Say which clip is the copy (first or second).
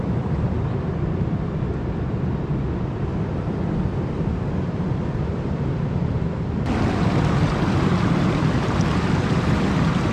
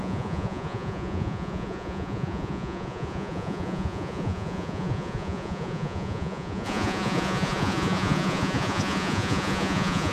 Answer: second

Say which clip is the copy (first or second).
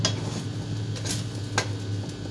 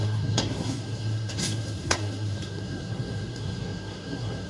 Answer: second